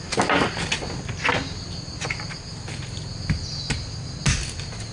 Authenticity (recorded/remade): recorded